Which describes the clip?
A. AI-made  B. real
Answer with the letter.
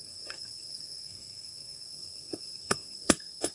A